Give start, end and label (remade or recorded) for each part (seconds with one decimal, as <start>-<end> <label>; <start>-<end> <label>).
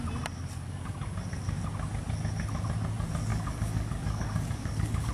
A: 0.0-3.3 recorded; 3.3-5.1 remade